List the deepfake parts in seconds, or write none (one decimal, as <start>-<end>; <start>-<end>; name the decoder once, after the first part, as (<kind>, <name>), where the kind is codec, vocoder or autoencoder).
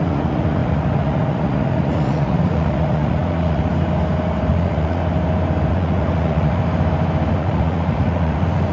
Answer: 0.0-3.7 (vocoder, Vocos); 4.5-5.0; 5.7-6.6; 7.3-8.7